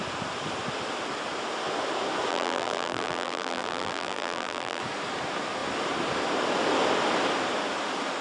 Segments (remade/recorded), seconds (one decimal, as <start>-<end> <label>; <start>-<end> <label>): 0.0-2.3 recorded; 2.3-4.8 remade; 4.8-8.2 recorded